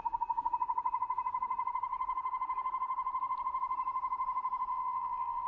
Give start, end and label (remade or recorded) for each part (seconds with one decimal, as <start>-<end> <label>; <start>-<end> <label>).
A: 0.0-4.7 recorded; 4.7-5.5 remade

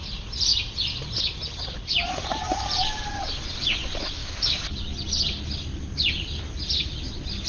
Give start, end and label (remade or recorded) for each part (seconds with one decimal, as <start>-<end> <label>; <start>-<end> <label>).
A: 0.0-7.5 recorded

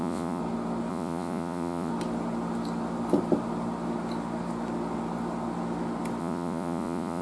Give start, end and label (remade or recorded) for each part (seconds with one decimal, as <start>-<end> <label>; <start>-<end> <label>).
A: 0.0-0.4 remade; 0.4-0.9 recorded; 0.9-1.9 remade; 1.9-6.2 recorded; 6.2-7.2 remade

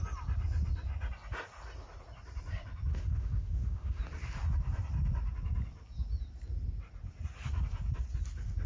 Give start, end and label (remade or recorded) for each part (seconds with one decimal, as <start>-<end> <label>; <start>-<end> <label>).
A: 0.0-2.9 recorded; 2.9-4.0 remade; 4.0-8.7 recorded

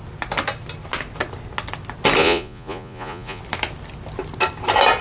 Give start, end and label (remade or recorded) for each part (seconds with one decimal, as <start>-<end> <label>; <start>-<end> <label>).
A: 0.0-2.2 recorded; 2.2-3.4 remade; 3.4-5.0 recorded

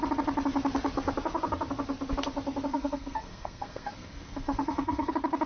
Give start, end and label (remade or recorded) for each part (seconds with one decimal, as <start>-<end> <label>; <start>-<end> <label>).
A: 0.0-2.7 recorded; 2.7-5.1 remade; 5.1-5.5 recorded

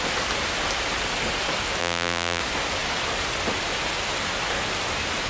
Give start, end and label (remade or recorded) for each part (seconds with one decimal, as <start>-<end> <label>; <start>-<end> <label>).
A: 0.0-1.8 recorded; 1.8-2.4 remade; 2.4-5.3 recorded

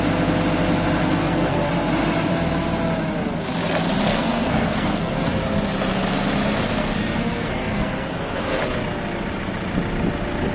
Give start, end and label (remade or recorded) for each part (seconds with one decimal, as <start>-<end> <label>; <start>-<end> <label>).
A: 0.0-1.0 recorded; 1.0-1.7 remade; 1.7-4.1 recorded; 4.1-5.4 remade; 5.4-6.8 recorded; 6.8-8.6 remade; 8.6-10.5 recorded